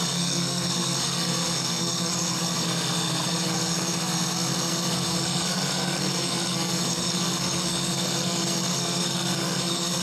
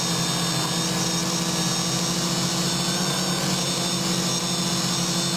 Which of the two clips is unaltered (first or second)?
second